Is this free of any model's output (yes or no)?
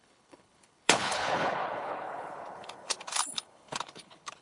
no